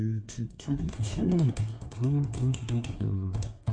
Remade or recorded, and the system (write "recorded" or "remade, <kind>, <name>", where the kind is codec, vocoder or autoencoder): remade, codec, SNAC